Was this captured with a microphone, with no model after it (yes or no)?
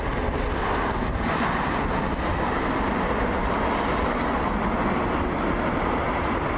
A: yes